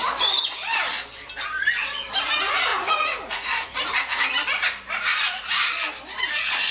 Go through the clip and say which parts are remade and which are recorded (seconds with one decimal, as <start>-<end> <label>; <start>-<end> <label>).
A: 0.0-2.7 recorded; 2.7-4.2 remade; 4.2-5.1 recorded; 5.1-5.7 remade; 5.7-6.7 recorded

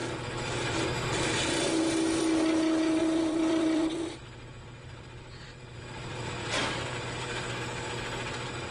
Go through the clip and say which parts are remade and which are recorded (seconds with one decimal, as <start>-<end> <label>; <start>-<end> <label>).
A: 0.0-1.7 remade; 1.7-3.0 recorded; 3.0-7.5 remade; 7.5-8.7 recorded

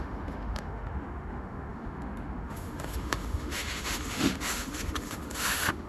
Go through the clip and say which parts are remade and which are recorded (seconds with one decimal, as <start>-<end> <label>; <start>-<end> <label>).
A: 0.0-5.9 remade

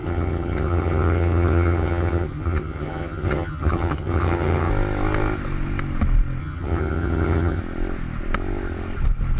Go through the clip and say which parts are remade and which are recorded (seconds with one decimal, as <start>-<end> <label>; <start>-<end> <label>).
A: 0.0-4.7 remade; 4.7-6.4 recorded; 6.4-7.6 remade; 7.6-9.4 recorded

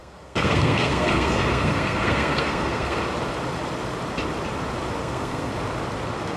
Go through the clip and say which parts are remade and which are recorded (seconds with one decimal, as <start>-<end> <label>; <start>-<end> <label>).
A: 0.0-3.0 remade; 3.0-5.0 recorded; 5.0-5.5 remade; 5.5-6.4 recorded

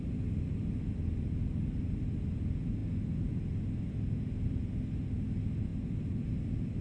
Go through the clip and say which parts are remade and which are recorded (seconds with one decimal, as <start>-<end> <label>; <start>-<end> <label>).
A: 0.0-6.8 recorded